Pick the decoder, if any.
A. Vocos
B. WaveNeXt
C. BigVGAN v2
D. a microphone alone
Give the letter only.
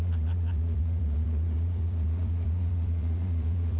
A